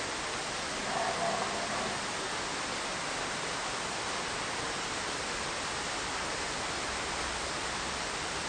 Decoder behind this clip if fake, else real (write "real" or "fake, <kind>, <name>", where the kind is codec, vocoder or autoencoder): real